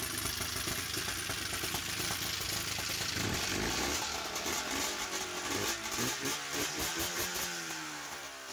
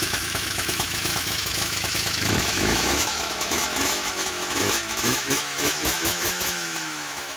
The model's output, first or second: second